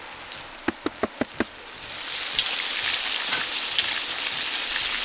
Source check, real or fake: real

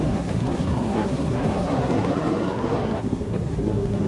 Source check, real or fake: fake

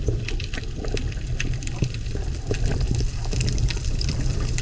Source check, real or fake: real